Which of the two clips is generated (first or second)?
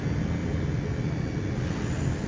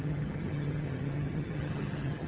second